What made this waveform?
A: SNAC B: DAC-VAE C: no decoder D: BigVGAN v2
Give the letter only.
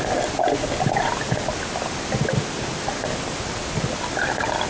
C